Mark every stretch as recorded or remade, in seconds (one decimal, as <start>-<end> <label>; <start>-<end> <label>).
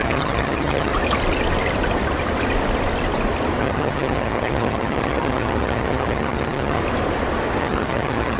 0.0-0.9 remade; 0.9-3.6 recorded; 3.6-6.8 remade; 6.8-7.6 recorded; 7.6-8.4 remade